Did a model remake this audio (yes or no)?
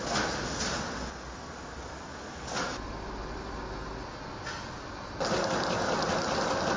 no